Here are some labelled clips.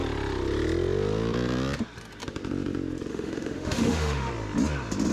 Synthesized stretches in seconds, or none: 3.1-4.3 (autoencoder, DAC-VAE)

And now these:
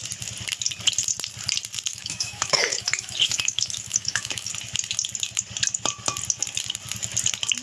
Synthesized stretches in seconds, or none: 1.9-4.5 (autoencoder, DAC-VAE)

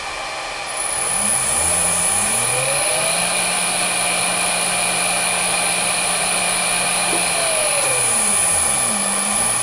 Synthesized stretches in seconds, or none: none

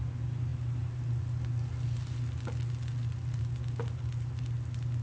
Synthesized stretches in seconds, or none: none

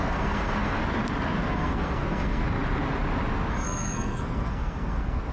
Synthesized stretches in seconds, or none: 0.0-0.8 (codec, SNAC); 1.5-2.4; 3.5-5.3

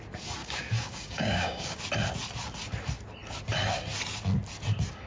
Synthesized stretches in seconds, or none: 0.4-1.8 (codec, DAC)

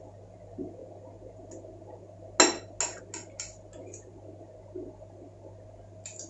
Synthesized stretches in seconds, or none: none